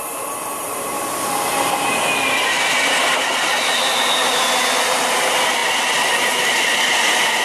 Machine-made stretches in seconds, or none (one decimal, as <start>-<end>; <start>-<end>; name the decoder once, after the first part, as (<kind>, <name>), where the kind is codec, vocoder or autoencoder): none